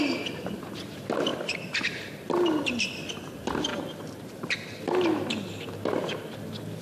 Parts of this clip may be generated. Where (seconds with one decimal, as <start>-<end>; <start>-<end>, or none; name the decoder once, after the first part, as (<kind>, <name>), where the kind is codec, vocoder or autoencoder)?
1.3-2.0 (vocoder, BigVGAN v2); 3.7-4.8